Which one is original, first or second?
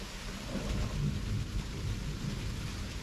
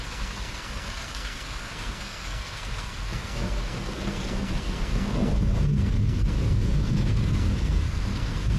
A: first